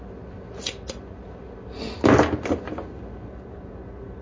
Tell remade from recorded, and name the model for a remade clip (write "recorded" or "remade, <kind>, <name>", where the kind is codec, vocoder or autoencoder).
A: recorded